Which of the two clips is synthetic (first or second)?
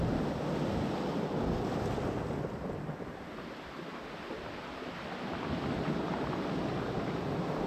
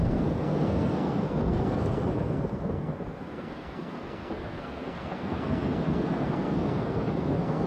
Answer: second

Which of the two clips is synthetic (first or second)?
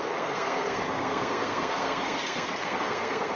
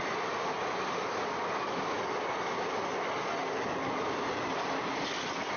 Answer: first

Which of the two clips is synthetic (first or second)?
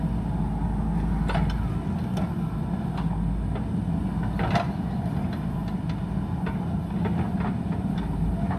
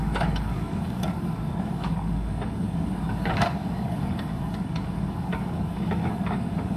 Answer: second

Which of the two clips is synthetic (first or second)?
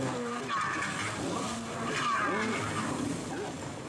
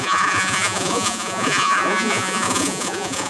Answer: second